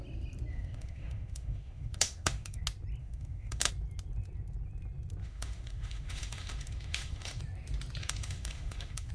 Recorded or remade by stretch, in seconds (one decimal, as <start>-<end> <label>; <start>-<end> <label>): 0.0-0.5 recorded; 0.5-2.6 remade; 2.6-3.0 recorded; 3.0-3.7 remade; 3.7-5.2 recorded; 5.2-7.4 remade; 7.4-8.0 recorded; 8.0-9.1 remade